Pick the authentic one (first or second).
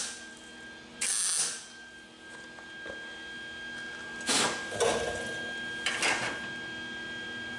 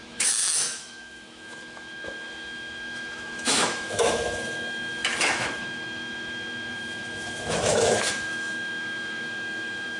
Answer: first